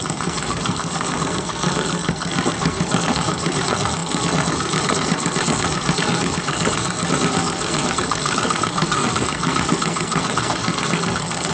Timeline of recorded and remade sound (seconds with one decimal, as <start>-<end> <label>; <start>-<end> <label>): 0.0-11.5 remade